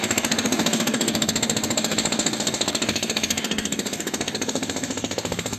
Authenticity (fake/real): fake